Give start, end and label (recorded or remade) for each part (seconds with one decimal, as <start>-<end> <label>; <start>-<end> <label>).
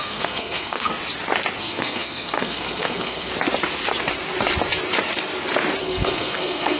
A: 0.0-0.9 remade; 0.9-1.6 recorded; 1.6-3.3 remade; 3.3-5.8 recorded; 5.8-6.8 remade